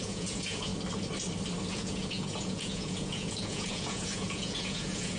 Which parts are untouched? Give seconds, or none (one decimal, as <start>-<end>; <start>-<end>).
0.7-1.7